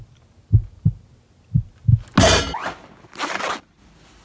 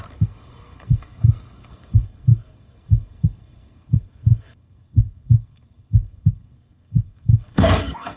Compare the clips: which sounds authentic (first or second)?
first